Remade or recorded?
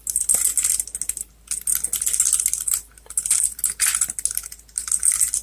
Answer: recorded